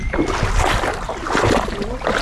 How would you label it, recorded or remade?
recorded